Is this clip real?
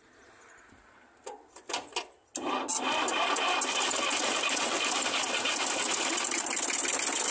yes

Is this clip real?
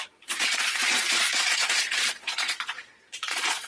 no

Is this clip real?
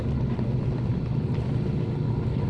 yes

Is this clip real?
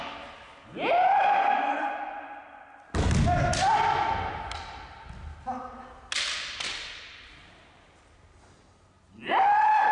yes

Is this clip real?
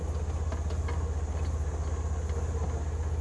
yes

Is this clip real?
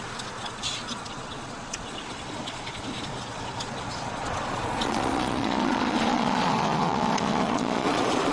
no